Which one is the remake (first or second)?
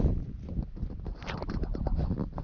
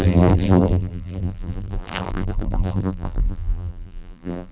second